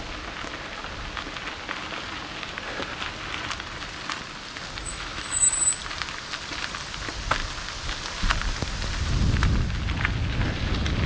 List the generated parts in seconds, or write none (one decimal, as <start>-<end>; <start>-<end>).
4.9-5.5